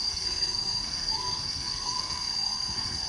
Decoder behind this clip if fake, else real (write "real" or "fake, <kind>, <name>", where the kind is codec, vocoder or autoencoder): fake, codec, SNAC